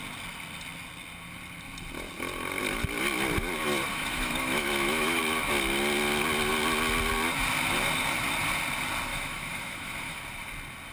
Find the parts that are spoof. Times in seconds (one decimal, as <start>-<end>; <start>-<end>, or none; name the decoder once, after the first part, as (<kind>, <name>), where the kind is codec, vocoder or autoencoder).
3.9-5.2 (autoencoder, DAC-VAE); 9.1-10.2